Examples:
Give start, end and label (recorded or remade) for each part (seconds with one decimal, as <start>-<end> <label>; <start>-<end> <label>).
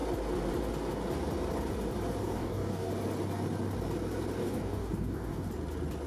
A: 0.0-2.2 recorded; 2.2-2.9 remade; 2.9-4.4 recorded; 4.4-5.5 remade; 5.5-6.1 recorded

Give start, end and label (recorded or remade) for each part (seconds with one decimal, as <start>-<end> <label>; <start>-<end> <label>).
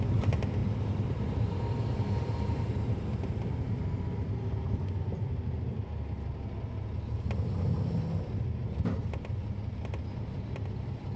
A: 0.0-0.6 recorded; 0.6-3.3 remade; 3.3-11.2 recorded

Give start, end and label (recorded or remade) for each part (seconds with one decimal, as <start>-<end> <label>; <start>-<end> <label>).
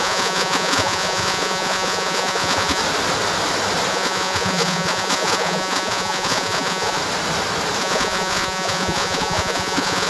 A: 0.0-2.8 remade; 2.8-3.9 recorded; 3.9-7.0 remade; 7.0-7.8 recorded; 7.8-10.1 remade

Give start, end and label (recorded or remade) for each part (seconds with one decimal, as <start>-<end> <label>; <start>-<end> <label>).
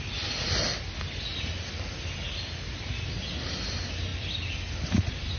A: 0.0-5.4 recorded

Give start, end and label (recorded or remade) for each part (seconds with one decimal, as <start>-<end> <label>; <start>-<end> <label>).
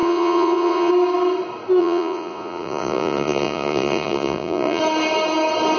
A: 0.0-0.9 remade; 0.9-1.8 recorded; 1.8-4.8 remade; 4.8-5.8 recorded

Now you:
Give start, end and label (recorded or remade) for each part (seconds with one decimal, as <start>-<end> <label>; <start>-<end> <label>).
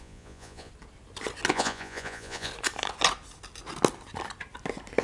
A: 0.0-0.7 remade; 0.7-1.5 recorded; 1.5-2.5 remade; 2.5-5.0 recorded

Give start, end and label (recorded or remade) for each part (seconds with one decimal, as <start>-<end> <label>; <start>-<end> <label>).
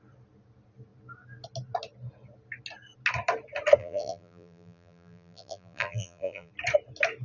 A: 0.0-3.8 recorded; 3.8-6.5 remade; 6.5-7.2 recorded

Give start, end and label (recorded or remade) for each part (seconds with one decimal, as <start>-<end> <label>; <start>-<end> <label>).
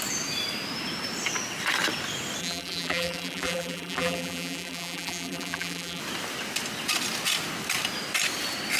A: 0.0-2.4 recorded; 2.4-6.0 remade; 6.0-8.8 recorded